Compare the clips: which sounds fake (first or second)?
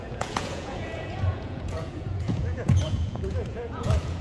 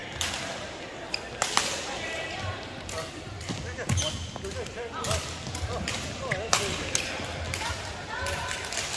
first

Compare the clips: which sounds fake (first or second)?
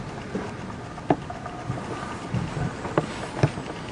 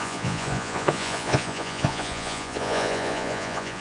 second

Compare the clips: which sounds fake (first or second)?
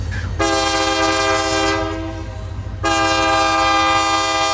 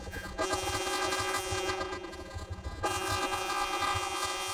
second